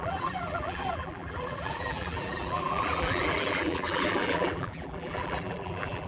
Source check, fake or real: fake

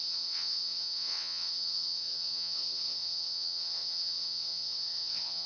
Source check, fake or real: fake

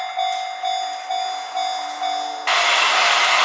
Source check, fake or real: real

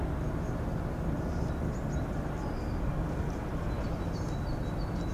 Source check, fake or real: real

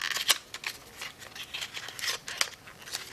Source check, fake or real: real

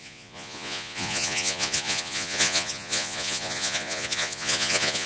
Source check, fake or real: fake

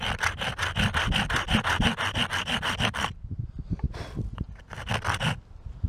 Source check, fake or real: real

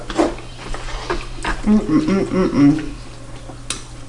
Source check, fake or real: real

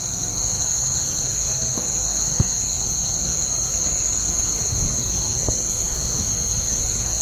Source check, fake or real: fake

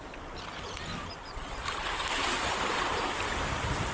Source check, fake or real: real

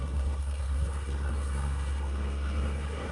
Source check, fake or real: fake